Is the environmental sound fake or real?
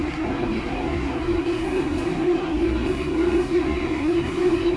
fake